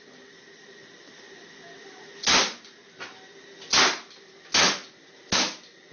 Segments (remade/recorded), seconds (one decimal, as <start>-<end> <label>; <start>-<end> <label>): 0.0-5.9 recorded